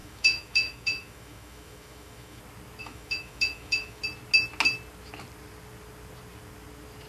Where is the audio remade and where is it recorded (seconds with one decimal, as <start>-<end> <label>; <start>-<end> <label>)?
0.0-2.4 remade; 2.4-2.8 recorded; 2.8-4.0 remade; 4.0-7.1 recorded